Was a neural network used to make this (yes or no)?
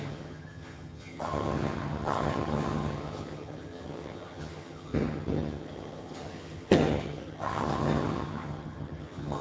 yes